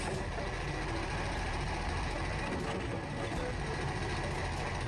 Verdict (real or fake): real